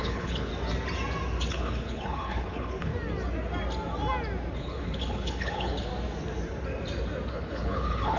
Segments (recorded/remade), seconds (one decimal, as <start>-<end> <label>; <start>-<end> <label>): 0.0-0.5 remade; 0.5-1.5 recorded; 1.5-2.9 remade; 2.9-4.5 recorded; 4.5-5.9 remade; 5.9-7.3 recorded; 7.3-8.2 remade